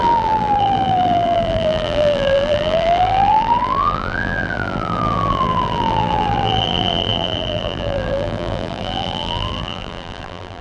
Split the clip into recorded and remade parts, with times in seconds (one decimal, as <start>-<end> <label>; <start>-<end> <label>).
0.0-10.6 remade